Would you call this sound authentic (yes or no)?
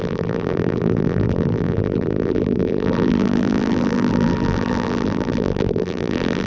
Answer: no